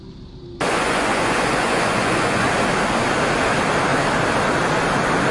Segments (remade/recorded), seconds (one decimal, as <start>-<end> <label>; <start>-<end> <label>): 0.0-0.7 recorded; 0.7-2.5 remade; 2.5-5.3 recorded